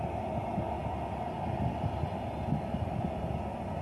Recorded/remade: recorded